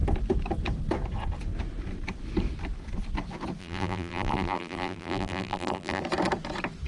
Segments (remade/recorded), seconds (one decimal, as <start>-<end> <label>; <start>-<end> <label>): 0.0-3.6 recorded; 3.6-6.0 remade; 6.0-6.9 recorded